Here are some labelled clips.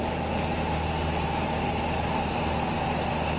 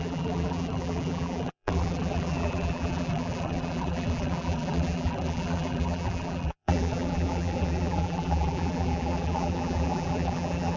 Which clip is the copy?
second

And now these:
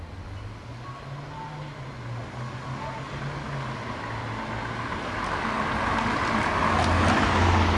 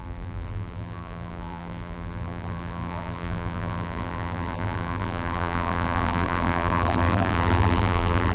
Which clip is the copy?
second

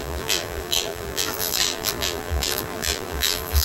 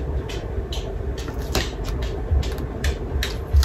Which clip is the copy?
first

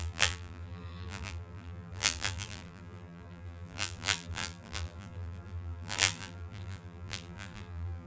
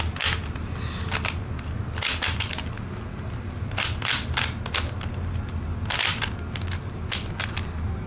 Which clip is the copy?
first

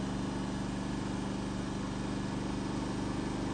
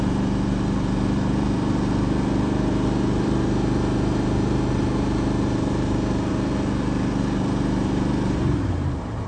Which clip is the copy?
second